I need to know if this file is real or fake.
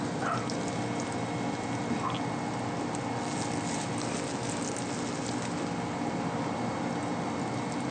real